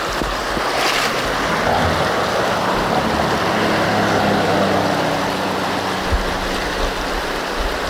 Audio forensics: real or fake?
real